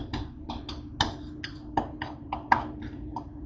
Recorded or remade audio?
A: recorded